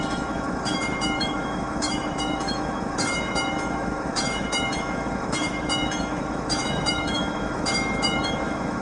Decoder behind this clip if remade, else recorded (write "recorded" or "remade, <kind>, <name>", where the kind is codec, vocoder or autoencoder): remade, autoencoder, DAC-VAE